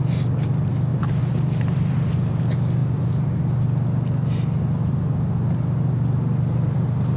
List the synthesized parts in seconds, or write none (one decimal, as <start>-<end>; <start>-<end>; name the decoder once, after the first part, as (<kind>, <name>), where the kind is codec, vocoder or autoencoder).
0.9-2.4 (vocoder, BigVGAN v2); 2.8-3.4